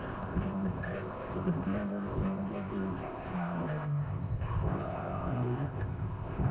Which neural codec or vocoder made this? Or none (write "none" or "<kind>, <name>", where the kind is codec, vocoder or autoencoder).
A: codec, ZipCodec